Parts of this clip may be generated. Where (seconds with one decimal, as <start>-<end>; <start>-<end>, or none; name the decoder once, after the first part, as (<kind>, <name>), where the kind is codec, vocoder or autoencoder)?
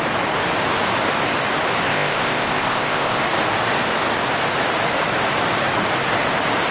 1.9-3.2 (codec, ZipCodec)